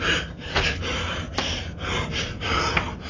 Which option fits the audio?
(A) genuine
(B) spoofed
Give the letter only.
A